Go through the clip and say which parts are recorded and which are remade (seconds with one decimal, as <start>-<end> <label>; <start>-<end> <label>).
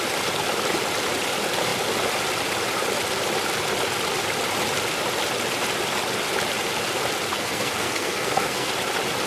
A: 0.0-7.3 recorded; 7.3-8.7 remade; 8.7-9.3 recorded